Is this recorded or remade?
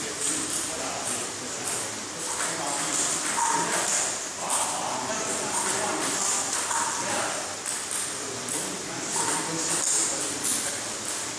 recorded